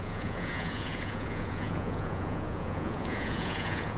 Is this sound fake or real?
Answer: fake